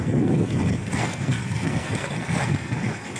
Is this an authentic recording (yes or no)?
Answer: no